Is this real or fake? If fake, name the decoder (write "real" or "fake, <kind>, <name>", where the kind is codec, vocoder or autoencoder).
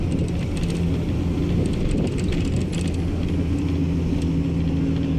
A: real